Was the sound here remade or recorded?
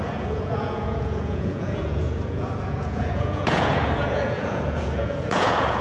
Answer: remade